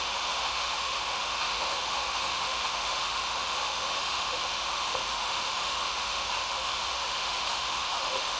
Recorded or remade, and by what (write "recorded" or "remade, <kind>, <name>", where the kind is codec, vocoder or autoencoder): remade, autoencoder, DAC-VAE